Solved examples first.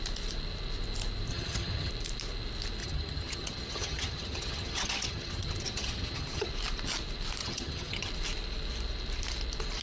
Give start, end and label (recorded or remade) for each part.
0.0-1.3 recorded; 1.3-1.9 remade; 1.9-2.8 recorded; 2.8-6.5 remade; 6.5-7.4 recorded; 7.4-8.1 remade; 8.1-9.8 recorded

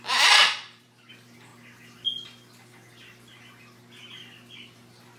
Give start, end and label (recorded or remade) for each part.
0.0-0.5 recorded; 0.5-1.1 remade; 1.1-5.2 recorded

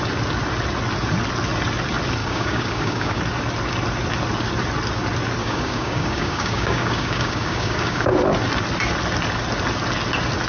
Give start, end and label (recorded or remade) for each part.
0.0-2.2 recorded; 2.2-3.2 remade; 3.2-5.4 recorded; 5.4-8.1 remade; 8.1-10.5 recorded

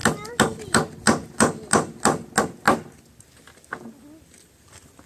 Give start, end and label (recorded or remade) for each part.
0.0-5.1 recorded

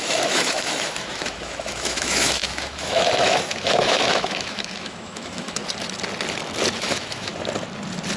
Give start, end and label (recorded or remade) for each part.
0.0-5.6 remade; 5.6-6.8 recorded; 6.8-7.3 remade; 7.3-8.2 recorded

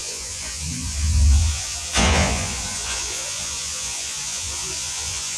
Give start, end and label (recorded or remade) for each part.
0.0-5.4 remade

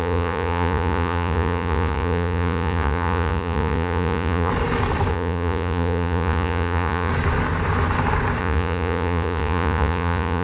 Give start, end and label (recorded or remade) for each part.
0.0-4.5 remade; 4.5-5.1 recorded; 5.1-7.1 remade; 7.1-8.4 recorded; 8.4-10.4 remade